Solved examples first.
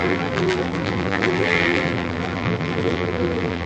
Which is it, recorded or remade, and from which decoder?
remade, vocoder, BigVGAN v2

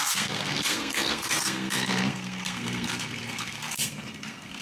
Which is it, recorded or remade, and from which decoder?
remade, codec, SNAC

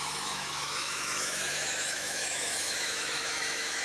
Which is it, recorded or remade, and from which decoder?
remade, autoencoder, DAC-VAE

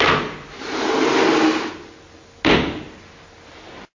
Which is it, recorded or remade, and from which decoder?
recorded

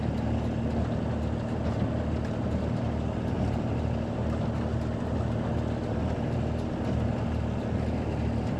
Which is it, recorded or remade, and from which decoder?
recorded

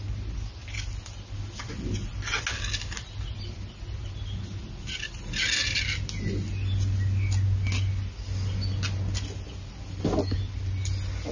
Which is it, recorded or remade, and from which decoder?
recorded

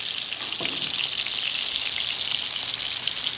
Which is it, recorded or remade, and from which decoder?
recorded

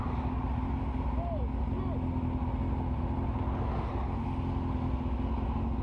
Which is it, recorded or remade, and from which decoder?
recorded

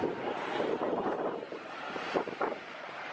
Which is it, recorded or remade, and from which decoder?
remade, vocoder, BigVGAN v2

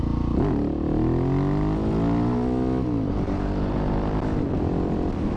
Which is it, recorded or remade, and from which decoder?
recorded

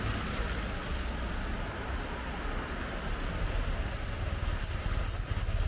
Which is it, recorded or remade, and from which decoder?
recorded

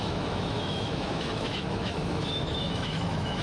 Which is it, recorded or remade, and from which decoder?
remade, autoencoder, DAC-VAE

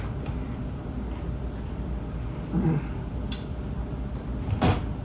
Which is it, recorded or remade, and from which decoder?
remade, vocoder, BigVGAN v2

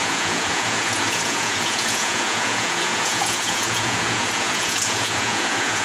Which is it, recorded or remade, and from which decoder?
remade, vocoder, Vocos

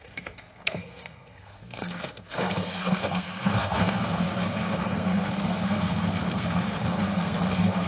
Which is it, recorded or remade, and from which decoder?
remade, codec, SNAC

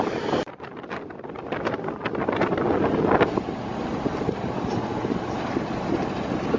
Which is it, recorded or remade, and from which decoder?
recorded